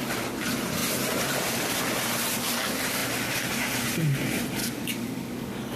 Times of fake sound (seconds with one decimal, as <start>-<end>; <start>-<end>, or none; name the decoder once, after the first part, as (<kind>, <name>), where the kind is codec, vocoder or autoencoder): 4.6-5.8 (codec, DAC)